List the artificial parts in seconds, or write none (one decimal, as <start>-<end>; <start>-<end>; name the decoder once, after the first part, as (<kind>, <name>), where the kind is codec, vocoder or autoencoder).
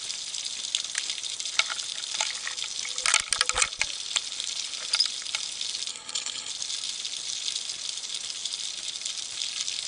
5.9-6.5 (codec, HILCodec)